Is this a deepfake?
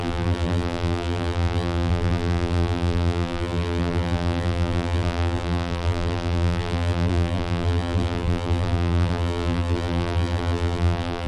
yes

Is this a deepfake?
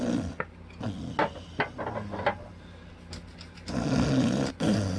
no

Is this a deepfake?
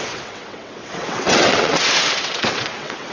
yes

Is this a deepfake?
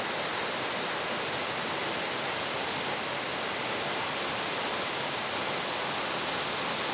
no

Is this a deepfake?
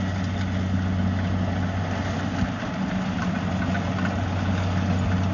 no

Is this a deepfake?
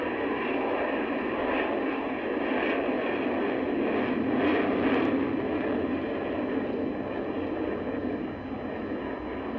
no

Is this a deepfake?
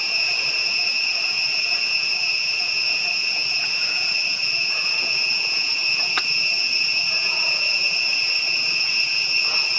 yes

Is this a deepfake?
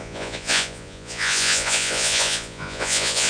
yes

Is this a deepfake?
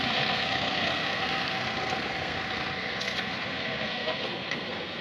yes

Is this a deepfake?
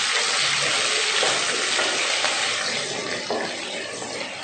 no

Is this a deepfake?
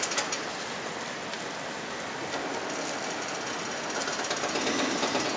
no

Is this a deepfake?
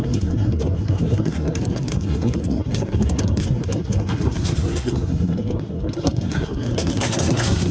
yes